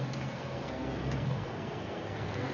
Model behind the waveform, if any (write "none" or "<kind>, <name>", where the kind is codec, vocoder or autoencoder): codec, SNAC